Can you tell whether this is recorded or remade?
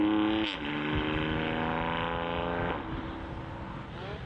recorded